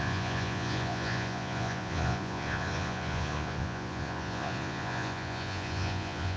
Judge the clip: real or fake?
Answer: fake